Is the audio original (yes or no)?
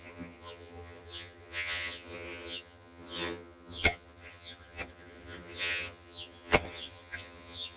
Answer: no